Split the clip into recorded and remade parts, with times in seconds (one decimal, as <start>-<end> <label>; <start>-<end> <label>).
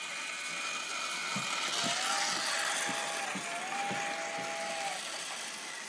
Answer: 0.0-1.2 remade; 1.2-4.7 recorded; 4.7-5.9 remade